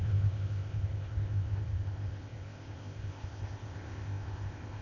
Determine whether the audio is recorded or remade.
remade